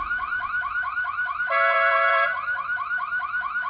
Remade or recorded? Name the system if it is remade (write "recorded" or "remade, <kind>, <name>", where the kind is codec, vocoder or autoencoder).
remade, vocoder, BigVGAN v2